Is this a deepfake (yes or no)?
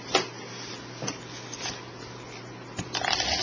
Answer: no